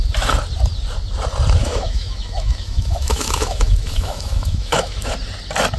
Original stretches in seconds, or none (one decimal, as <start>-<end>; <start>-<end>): 0.0-1.6; 5.1-5.8